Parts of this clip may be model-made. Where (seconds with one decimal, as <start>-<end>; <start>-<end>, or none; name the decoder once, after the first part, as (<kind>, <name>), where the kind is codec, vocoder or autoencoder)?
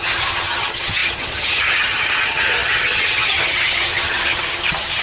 0.0-5.0 (vocoder, HiFi-GAN)